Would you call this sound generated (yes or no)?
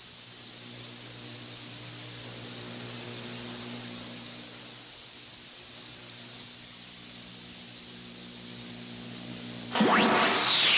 no